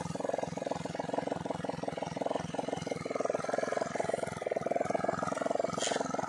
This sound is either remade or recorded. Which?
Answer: recorded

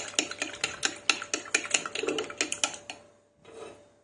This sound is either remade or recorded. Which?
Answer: recorded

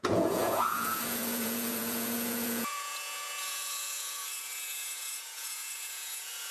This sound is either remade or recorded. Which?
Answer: remade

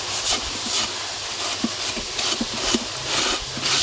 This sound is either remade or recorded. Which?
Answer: recorded